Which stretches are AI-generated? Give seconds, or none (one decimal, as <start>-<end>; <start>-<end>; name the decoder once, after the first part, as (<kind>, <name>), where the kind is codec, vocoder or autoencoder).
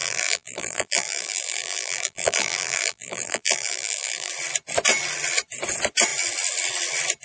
0.0-4.3 (vocoder, BigVGAN v2)